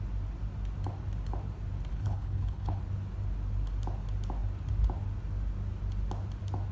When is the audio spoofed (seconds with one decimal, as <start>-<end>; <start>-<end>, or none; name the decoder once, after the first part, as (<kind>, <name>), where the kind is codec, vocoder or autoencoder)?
1.9-2.8 (codec, HILCodec)